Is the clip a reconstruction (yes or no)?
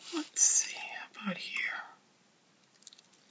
no